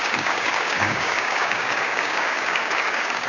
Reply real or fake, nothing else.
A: fake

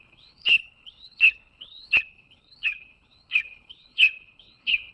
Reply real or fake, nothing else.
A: fake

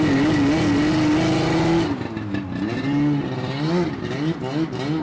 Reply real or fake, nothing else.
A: real